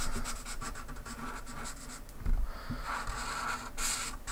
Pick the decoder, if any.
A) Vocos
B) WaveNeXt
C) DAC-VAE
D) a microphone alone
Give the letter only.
D